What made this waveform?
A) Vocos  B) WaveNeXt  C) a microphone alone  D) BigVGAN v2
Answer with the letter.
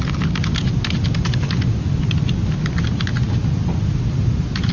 C